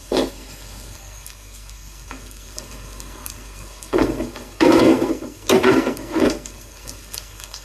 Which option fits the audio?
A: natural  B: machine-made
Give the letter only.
B